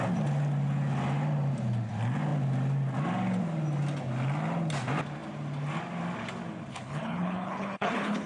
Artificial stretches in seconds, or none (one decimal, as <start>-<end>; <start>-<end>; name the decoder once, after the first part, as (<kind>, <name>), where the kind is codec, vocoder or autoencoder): 6.7-8.3 (codec, HILCodec)

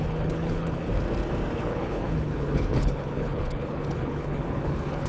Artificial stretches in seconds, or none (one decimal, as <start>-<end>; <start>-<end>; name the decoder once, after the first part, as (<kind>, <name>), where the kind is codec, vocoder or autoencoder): 0.0-0.9 (codec, HILCodec); 1.5-5.1

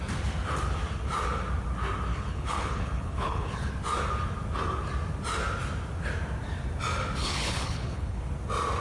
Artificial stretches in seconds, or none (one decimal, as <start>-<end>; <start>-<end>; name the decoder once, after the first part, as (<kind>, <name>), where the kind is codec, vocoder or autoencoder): 2.1-3.7 (codec, HILCodec); 7.2-8.2

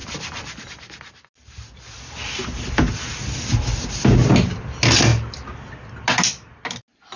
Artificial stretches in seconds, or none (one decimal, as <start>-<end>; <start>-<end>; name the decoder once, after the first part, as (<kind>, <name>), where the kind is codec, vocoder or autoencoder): none